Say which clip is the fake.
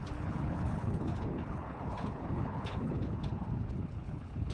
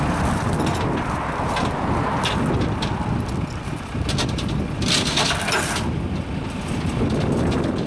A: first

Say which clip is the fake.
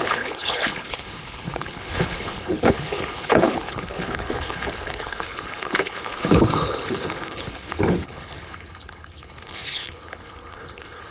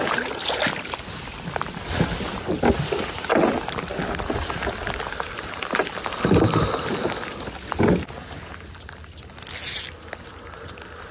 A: first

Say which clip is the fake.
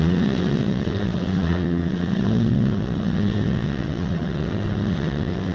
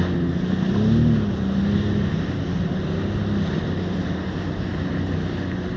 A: first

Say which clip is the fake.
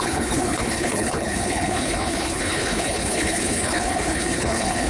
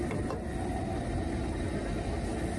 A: first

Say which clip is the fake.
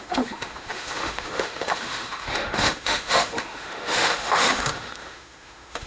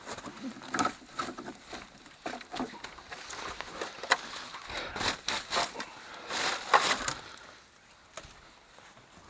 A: first